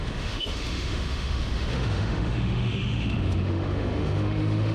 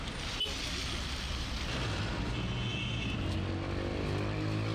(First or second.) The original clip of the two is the second